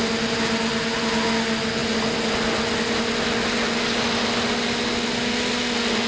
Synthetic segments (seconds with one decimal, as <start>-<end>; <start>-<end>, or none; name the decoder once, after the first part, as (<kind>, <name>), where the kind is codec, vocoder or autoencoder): none